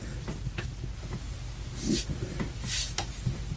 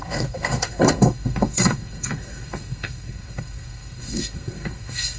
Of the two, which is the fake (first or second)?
second